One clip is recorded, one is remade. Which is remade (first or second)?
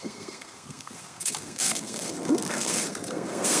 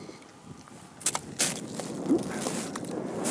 first